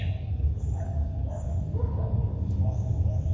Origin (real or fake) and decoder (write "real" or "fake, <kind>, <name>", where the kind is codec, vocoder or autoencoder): fake, codec, DAC